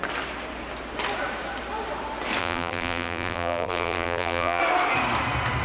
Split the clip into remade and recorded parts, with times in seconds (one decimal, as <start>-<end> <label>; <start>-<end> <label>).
0.0-2.4 recorded; 2.4-4.6 remade; 4.6-5.6 recorded

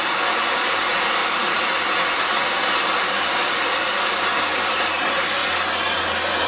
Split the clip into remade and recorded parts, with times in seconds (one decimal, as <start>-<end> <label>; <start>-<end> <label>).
0.0-1.2 recorded; 1.2-4.7 remade; 4.7-6.5 recorded

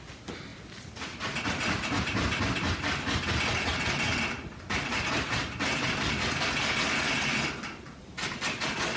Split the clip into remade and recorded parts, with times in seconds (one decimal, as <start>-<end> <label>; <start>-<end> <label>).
0.0-0.5 recorded; 0.5-3.4 remade; 3.4-4.1 recorded; 4.1-6.6 remade; 6.6-9.0 recorded

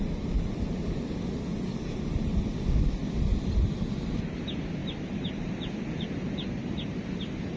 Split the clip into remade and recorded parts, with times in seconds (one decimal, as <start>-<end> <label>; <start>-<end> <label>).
0.0-3.3 recorded; 3.3-3.9 remade; 3.9-4.8 recorded; 4.8-5.5 remade; 5.5-7.6 recorded